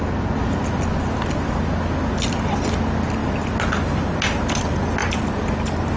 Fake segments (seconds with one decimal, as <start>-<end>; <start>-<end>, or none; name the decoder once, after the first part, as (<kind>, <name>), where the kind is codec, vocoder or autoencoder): none